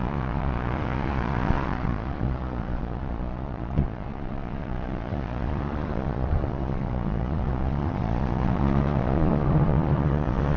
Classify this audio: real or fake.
fake